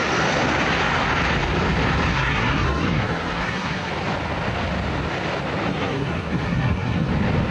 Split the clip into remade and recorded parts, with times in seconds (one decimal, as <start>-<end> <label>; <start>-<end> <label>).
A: 0.0-2.1 recorded; 2.1-3.9 remade; 3.9-5.7 recorded; 5.7-7.1 remade; 7.1-7.5 recorded